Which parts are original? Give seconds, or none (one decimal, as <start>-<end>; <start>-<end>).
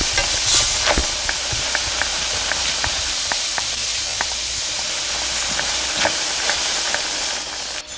0.0-2.1; 6.9-8.0